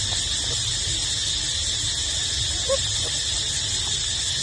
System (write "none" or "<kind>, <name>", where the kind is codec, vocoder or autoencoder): none